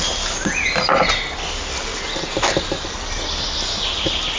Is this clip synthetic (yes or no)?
no